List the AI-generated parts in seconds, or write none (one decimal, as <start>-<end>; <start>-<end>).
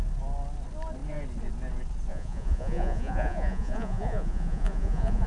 2.1-5.3